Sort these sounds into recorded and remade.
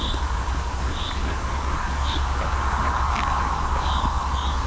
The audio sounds remade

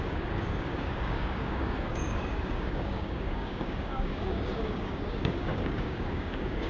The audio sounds remade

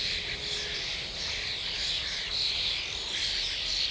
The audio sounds recorded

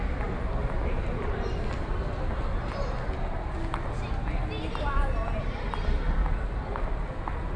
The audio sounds recorded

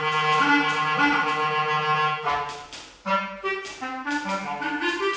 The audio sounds recorded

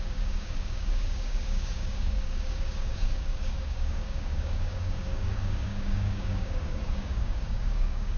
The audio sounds remade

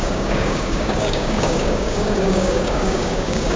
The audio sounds remade